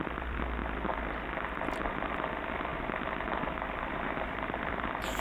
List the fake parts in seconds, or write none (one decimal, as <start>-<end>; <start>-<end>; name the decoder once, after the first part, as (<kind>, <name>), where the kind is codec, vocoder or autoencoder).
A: 0.0-0.6 (vocoder, BigVGAN v2); 2.1-5.2